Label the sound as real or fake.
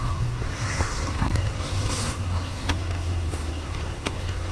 fake